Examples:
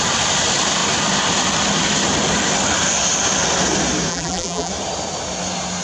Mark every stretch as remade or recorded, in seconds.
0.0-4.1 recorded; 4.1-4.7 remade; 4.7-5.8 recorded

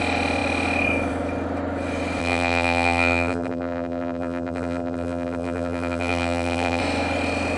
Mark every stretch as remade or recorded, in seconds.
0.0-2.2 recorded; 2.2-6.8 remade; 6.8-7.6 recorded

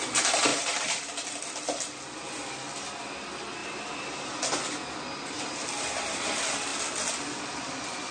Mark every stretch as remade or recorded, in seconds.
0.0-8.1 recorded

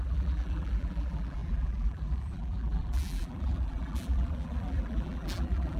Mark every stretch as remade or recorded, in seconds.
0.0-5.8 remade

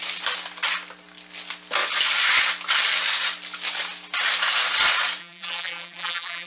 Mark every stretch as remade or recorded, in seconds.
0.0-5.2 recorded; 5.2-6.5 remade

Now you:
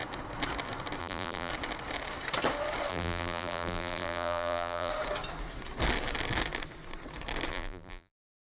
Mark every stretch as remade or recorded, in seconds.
0.0-1.0 recorded; 1.0-1.5 remade; 1.5-2.9 recorded; 2.9-4.9 remade; 4.9-7.5 recorded; 7.5-8.4 remade

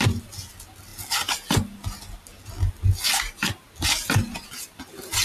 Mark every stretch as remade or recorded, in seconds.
0.0-5.2 recorded